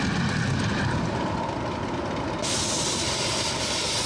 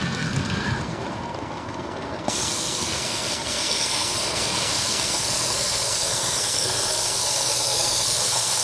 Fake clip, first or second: second